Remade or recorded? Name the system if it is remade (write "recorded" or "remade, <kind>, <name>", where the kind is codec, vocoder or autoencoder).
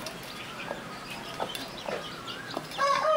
remade, vocoder, BigVGAN v2